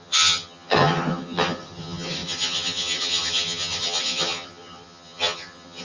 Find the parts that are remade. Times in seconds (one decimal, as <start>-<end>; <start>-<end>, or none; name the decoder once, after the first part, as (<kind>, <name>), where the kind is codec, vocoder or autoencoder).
0.0-5.8 (vocoder, HiFi-GAN)